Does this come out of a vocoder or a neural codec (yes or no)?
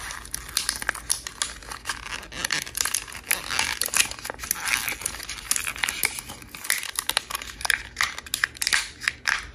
no